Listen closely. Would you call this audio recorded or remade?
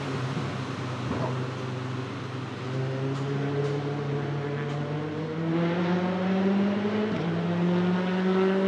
recorded